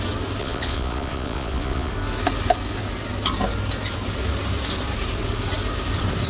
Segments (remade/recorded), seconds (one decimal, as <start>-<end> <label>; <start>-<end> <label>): 0.0-0.4 recorded; 0.4-1.9 remade; 1.9-6.3 recorded